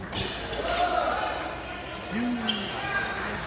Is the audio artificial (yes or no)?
no